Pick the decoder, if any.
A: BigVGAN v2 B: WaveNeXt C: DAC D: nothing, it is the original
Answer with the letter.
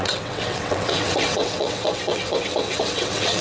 B